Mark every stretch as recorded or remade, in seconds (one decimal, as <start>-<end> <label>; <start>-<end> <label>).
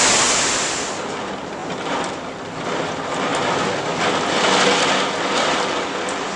0.0-3.3 remade; 3.3-5.1 recorded; 5.1-6.4 remade